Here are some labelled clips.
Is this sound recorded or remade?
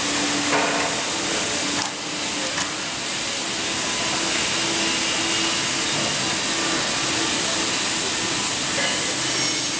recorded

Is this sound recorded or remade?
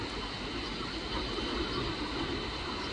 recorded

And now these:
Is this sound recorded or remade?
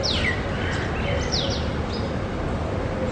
recorded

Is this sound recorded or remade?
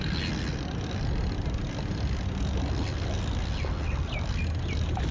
recorded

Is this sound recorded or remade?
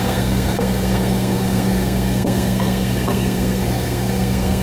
remade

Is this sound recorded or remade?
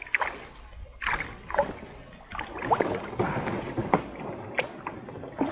recorded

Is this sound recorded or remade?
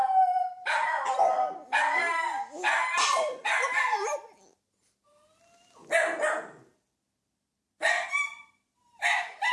recorded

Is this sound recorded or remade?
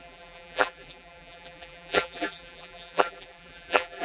remade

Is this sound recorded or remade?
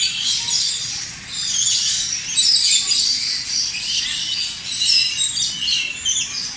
recorded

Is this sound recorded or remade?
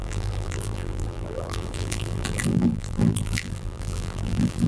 remade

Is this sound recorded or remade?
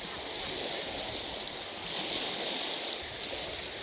recorded